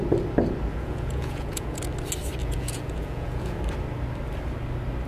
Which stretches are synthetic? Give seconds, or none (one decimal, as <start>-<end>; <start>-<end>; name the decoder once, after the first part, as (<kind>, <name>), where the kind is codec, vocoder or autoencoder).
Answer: 0.7-1.8 (vocoder, Vocos); 2.4-3.6